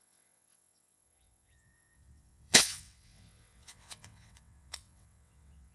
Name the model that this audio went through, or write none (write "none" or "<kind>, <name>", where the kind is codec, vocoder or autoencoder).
vocoder, WaveNeXt